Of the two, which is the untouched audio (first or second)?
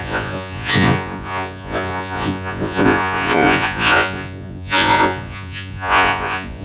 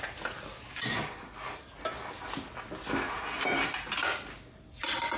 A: second